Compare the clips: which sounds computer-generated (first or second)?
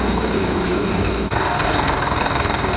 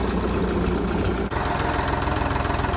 first